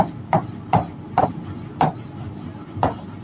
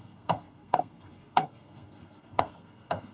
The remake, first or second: second